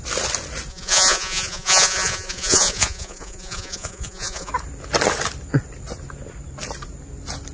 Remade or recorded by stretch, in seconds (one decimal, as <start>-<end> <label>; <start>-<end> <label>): 0.0-0.7 recorded; 0.7-4.5 remade; 4.5-7.5 recorded